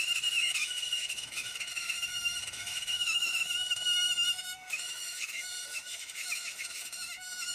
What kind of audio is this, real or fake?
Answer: fake